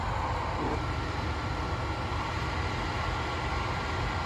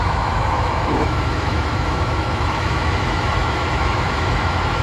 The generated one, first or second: second